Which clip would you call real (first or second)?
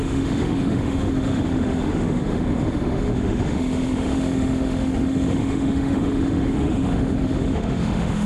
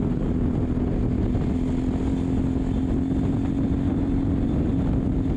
second